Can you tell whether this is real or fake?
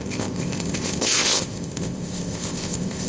fake